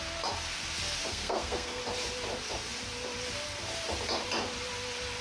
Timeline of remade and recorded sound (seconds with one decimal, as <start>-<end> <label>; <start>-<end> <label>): 0.0-1.1 recorded; 1.1-1.8 remade; 1.8-5.2 recorded